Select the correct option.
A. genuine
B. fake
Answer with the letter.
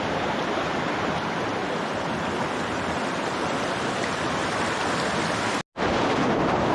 A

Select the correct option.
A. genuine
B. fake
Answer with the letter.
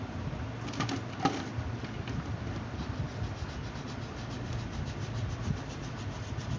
A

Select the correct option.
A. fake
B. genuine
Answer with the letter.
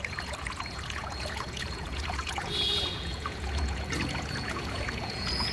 A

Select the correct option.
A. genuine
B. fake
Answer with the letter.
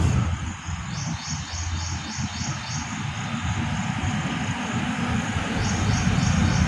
A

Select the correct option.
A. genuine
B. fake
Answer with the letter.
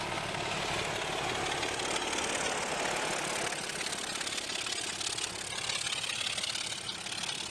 A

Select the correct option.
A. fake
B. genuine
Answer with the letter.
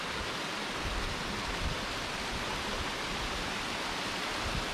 B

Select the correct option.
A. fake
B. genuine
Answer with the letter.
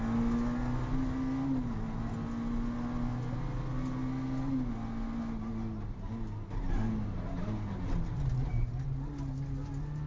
B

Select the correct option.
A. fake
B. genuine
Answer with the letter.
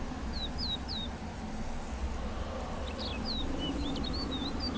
B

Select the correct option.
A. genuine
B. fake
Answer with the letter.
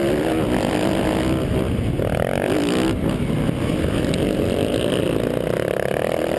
A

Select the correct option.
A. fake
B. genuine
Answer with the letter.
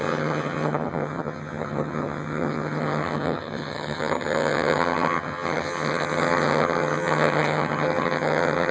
A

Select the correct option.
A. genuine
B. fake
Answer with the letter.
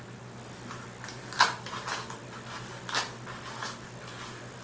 A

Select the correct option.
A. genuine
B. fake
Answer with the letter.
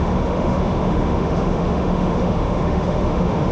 B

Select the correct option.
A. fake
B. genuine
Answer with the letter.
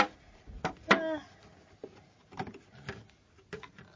B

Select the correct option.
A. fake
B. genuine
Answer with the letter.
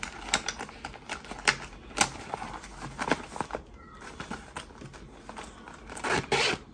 B